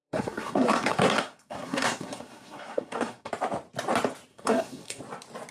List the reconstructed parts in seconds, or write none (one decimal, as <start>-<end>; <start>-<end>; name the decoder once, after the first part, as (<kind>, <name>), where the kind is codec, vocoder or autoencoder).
0.0-3.3 (codec, SNAC); 4.3-5.0